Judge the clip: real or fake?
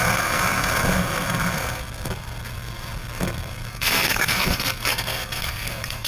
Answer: fake